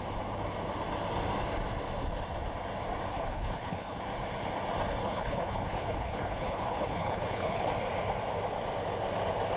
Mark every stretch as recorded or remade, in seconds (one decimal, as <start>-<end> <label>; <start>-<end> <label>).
0.0-3.1 recorded; 3.1-4.0 remade; 4.0-5.0 recorded; 5.0-7.7 remade; 7.7-9.6 recorded

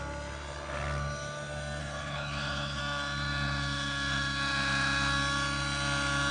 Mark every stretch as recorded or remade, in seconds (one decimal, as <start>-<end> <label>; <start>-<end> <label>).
0.0-1.8 recorded; 1.8-2.8 remade; 2.8-6.3 recorded

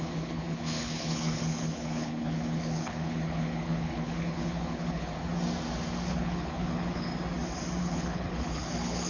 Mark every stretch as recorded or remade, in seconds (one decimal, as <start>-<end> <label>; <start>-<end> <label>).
0.0-5.1 remade; 5.1-6.1 recorded; 6.1-7.1 remade; 7.1-7.8 recorded; 7.8-9.1 remade

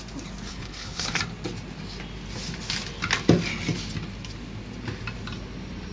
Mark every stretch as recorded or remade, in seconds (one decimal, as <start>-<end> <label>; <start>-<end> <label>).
0.0-0.5 recorded; 0.5-1.2 remade; 1.2-5.9 recorded

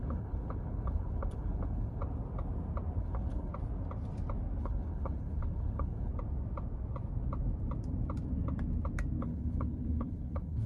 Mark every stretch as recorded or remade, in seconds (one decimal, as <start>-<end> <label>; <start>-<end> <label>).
0.0-2.0 remade; 2.0-3.0 recorded; 3.0-3.5 remade; 3.5-4.6 recorded; 4.6-6.1 remade; 6.1-9.2 recorded; 9.2-10.7 remade

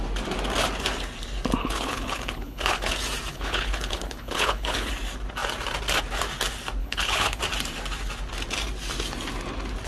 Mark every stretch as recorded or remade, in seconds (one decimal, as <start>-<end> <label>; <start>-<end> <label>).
0.0-1.6 recorded; 1.6-2.9 remade; 2.9-3.3 recorded; 3.3-4.9 remade; 4.9-6.8 recorded; 6.8-7.4 remade; 7.4-9.9 recorded

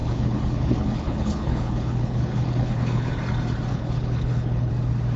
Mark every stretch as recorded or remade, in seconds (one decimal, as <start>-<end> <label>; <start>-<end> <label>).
0.0-3.1 remade; 3.1-3.7 recorded; 3.7-4.7 remade; 4.7-5.2 recorded